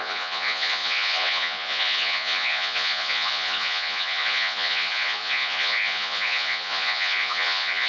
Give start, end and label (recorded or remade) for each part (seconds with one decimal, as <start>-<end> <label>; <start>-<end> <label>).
0.0-7.9 remade